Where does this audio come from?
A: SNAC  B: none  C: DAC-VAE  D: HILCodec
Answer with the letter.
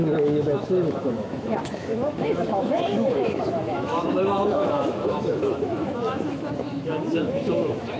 C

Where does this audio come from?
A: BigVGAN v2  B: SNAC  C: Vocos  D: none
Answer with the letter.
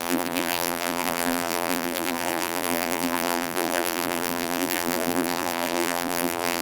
A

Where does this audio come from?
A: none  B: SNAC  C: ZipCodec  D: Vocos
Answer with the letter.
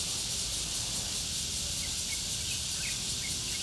A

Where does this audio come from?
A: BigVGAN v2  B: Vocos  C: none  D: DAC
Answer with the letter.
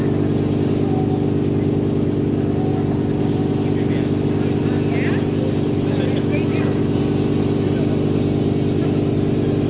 C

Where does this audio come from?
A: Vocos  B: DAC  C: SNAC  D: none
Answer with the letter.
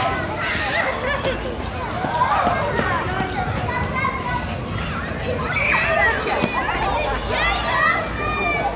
D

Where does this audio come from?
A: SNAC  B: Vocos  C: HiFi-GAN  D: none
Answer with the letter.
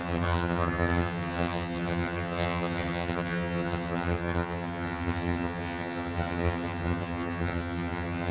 C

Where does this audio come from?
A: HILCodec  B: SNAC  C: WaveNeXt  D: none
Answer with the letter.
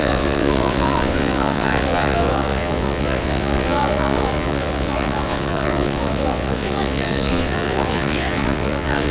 C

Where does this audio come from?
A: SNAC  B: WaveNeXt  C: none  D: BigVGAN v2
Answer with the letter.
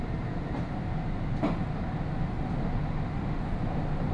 C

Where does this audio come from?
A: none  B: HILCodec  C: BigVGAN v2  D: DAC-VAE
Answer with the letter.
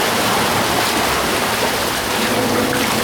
A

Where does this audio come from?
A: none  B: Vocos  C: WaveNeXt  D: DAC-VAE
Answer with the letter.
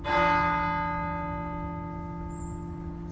A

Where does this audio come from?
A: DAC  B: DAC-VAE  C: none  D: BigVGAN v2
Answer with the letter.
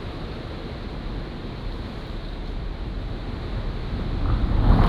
C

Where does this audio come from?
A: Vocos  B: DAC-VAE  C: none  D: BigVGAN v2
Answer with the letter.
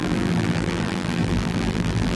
D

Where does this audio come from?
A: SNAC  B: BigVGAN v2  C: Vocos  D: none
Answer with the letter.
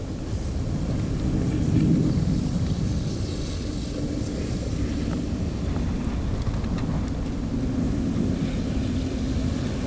D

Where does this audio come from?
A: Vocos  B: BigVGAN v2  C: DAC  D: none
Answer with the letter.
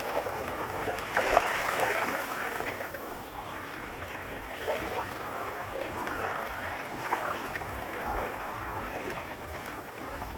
C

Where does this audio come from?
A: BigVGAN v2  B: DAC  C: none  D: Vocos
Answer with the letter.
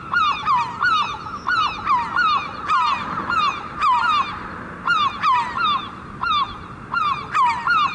C